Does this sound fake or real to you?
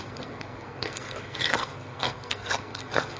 fake